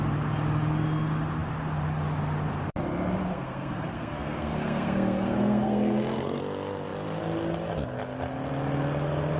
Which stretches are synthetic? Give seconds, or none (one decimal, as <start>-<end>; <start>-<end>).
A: 3.3-6.4